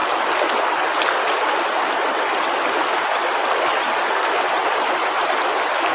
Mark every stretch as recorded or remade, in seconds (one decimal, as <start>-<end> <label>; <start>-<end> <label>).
0.0-4.6 recorded; 4.6-5.2 remade; 5.2-5.9 recorded